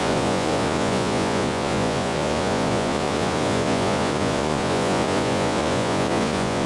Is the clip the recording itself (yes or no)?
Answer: no